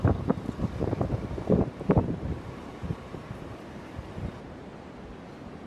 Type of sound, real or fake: fake